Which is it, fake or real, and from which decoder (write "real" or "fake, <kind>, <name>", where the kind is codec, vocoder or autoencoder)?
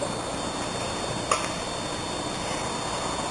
real